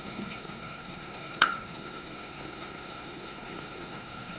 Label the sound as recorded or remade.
remade